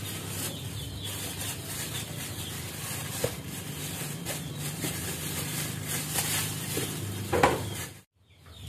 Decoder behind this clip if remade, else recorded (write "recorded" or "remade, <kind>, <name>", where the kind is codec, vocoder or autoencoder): recorded